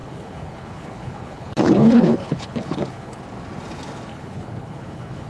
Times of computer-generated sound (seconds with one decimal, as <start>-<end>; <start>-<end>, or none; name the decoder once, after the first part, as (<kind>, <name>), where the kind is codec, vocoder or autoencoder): 0.0-3.2 (codec, HILCodec); 4.1-5.3